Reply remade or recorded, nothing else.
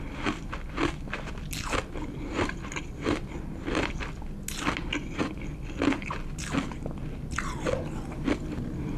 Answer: recorded